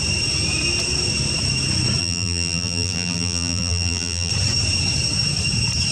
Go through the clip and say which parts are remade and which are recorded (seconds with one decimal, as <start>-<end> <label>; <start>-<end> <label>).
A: 0.0-2.0 recorded; 2.0-4.3 remade; 4.3-5.9 recorded